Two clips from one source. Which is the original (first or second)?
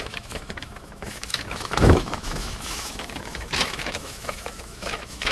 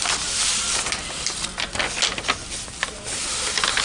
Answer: second